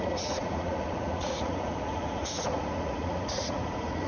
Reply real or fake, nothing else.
fake